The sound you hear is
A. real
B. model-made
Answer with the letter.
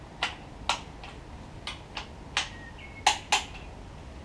A